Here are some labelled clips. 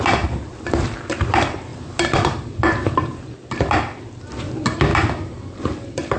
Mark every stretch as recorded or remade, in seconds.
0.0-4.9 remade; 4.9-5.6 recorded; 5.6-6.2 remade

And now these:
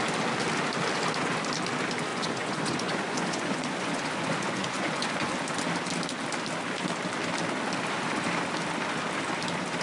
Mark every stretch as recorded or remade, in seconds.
0.0-2.1 recorded; 2.1-5.3 remade; 5.3-9.8 recorded

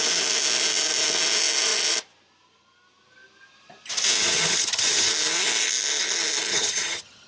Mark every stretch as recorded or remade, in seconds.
0.0-4.2 recorded; 4.2-5.1 remade; 5.1-6.5 recorded; 6.5-7.3 remade

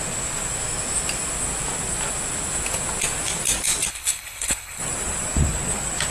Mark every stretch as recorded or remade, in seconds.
0.0-3.9 recorded; 3.9-4.8 remade; 4.8-6.1 recorded